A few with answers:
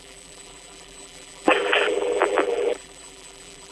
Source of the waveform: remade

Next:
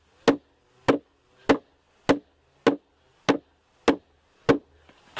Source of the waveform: recorded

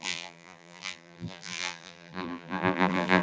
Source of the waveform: remade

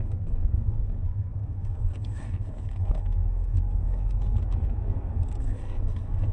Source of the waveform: remade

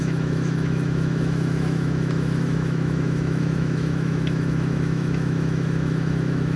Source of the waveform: remade